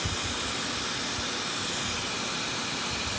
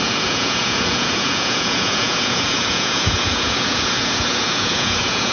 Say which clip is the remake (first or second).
second